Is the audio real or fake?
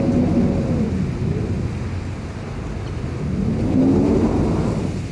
real